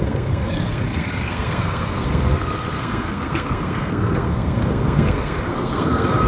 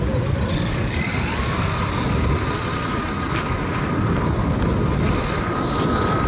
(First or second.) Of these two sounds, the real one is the second